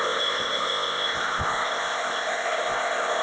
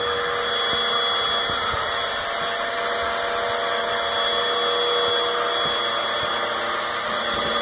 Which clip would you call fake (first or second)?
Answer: first